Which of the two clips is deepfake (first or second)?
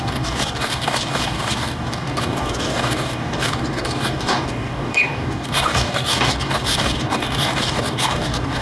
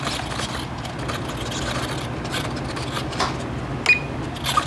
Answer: first